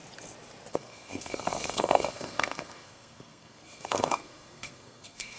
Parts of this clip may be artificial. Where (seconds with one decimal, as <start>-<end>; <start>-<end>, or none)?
0.7-5.4